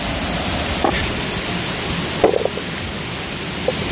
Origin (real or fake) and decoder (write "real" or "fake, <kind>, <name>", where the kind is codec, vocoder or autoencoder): real